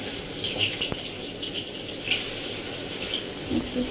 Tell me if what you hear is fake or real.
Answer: real